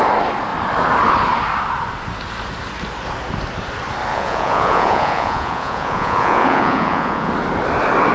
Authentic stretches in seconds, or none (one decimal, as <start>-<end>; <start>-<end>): 0.0-4.1; 7.3-8.1